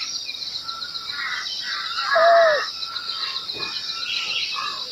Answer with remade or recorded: recorded